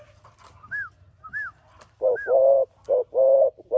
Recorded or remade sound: recorded